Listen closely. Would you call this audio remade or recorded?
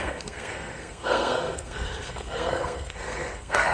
remade